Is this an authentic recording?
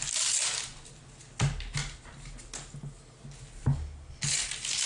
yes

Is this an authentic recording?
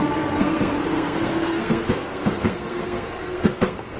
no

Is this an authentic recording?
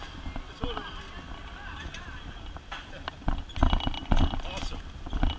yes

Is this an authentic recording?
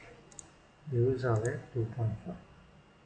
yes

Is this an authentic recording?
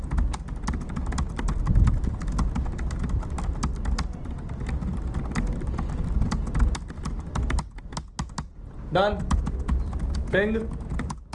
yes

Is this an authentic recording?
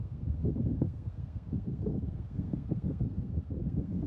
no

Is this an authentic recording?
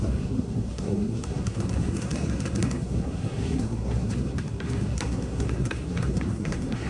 no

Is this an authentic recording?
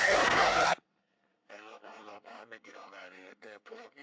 no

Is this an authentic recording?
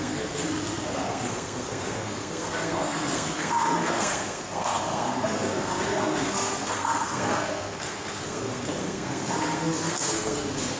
no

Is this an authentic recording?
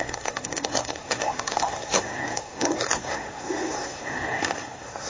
no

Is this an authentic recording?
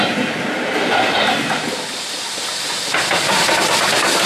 yes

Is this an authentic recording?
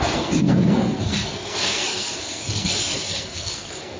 no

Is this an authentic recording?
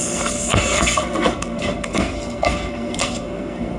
no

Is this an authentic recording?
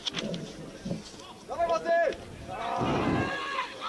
yes